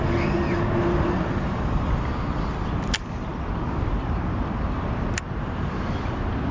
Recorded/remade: recorded